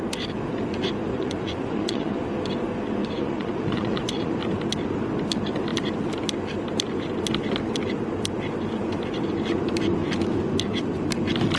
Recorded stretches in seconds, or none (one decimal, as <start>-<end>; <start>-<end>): 0.0-1.1; 2.2-3.0; 4.3-11.6